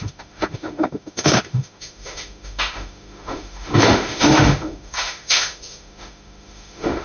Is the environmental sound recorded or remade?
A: remade